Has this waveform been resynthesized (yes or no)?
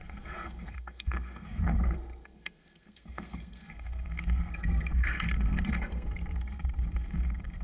yes